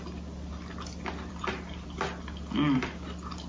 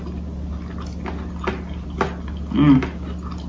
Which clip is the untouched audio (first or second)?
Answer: second